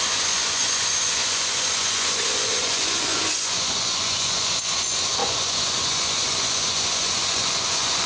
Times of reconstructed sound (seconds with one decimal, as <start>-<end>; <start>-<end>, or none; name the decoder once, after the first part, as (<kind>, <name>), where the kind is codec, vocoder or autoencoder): 0.0-8.1 (vocoder, Vocos)